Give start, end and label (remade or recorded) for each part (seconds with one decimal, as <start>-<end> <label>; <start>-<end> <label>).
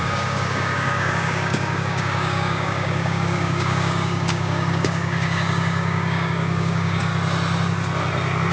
0.0-7.1 remade; 7.1-8.5 recorded